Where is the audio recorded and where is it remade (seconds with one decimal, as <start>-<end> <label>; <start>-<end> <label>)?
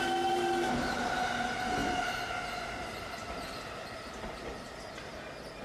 0.0-5.6 recorded